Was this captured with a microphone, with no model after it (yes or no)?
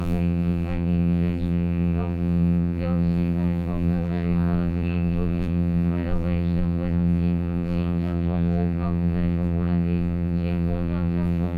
no